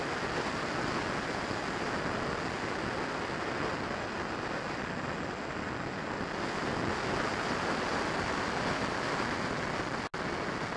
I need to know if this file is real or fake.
real